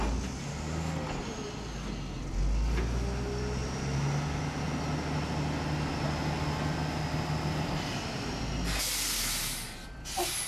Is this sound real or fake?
real